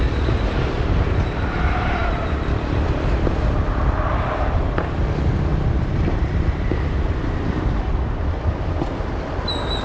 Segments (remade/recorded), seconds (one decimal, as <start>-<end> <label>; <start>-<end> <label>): 0.0-9.8 recorded